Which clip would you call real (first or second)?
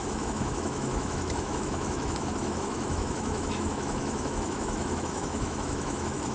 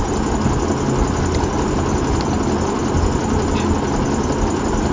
second